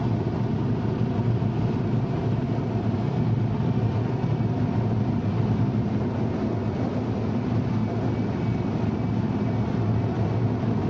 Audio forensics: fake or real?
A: real